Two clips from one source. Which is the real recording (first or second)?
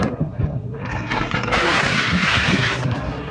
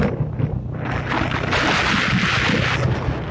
second